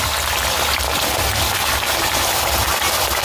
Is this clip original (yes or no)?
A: yes